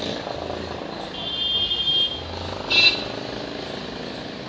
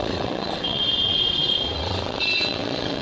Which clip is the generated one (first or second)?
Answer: second